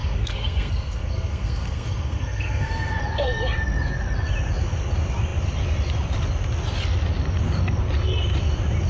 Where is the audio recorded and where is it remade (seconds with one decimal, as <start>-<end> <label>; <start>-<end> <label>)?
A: 0.0-3.0 remade; 3.0-8.9 recorded